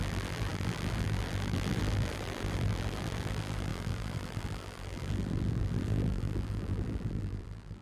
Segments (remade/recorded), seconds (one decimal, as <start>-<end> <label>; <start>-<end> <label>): 0.0-7.8 remade